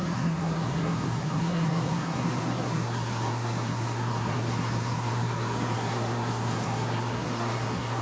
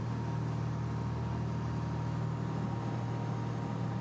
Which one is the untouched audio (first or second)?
second